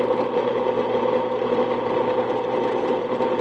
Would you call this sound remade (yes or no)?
no